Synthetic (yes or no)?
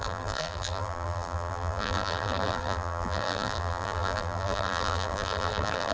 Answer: yes